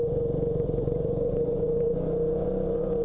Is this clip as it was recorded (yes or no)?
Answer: no